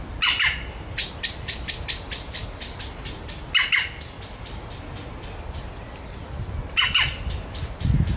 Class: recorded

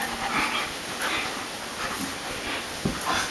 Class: recorded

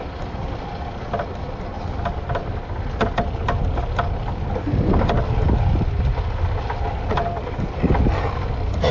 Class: recorded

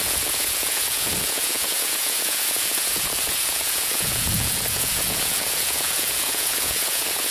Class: remade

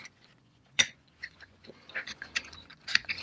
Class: remade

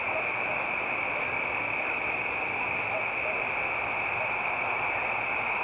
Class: recorded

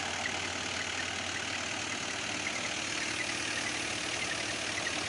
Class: recorded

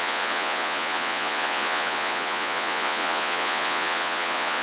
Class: remade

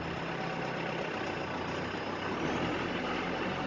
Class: recorded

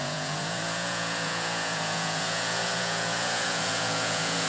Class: remade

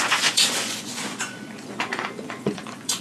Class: remade